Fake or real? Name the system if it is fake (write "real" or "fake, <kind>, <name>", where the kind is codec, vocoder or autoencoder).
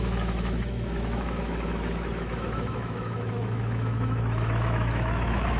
fake, autoencoder, DAC-VAE